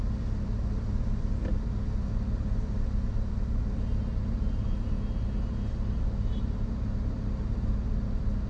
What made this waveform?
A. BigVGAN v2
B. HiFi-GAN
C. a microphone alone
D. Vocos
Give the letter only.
C